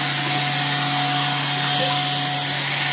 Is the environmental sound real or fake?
real